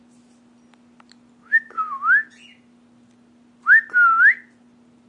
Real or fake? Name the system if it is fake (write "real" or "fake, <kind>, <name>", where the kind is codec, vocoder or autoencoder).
real